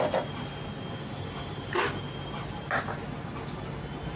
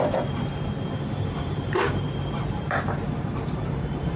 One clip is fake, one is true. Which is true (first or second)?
first